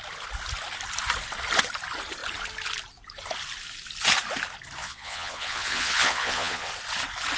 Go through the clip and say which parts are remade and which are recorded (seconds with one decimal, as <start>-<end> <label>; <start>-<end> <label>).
0.0-4.8 recorded; 4.8-6.7 remade; 6.7-7.4 recorded